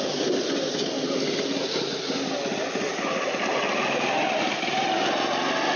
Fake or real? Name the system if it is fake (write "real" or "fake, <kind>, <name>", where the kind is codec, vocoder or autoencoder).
real